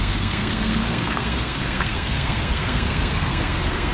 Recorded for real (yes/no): no